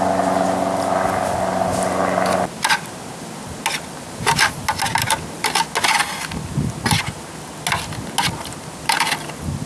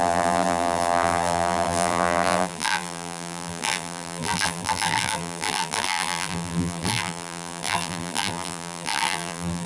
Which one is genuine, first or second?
first